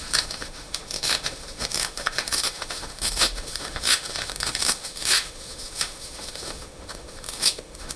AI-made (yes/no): yes